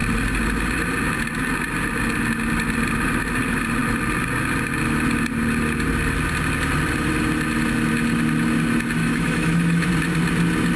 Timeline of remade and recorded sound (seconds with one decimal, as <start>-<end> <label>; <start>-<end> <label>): 0.0-9.0 recorded; 9.0-9.9 remade; 9.9-10.8 recorded